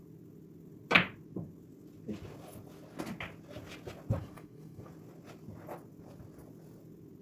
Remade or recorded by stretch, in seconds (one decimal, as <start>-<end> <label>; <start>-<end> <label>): 0.0-4.2 recorded; 4.2-4.9 remade; 4.9-7.2 recorded